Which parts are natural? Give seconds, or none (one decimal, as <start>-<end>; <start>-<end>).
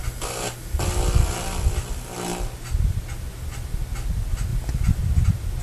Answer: 0.0-5.6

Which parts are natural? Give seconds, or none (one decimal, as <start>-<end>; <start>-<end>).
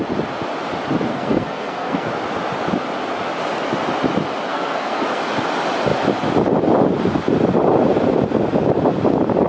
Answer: 0.0-1.1; 2.1-4.5; 5.2-9.5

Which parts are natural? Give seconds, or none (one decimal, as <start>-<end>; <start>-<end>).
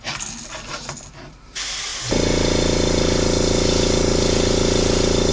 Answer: 0.0-5.3